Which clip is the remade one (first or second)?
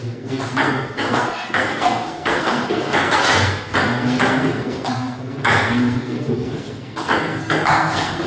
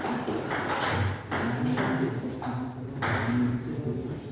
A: first